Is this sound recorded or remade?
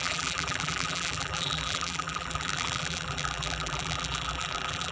remade